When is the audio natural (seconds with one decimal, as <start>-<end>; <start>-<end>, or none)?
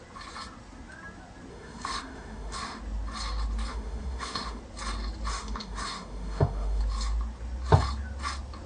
0.0-1.5; 2.8-3.7; 4.6-5.3; 6.8-8.7